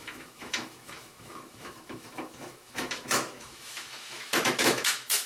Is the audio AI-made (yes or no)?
yes